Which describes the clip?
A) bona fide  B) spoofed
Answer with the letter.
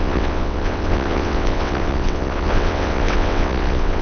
B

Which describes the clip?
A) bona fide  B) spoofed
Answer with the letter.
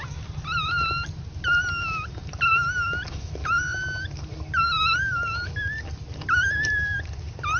A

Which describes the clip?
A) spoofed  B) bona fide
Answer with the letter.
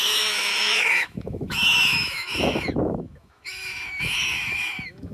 A